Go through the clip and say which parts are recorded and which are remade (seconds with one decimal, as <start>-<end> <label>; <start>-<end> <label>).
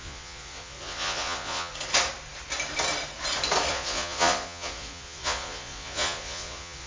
0.0-1.7 remade; 1.7-3.7 recorded; 3.7-6.9 remade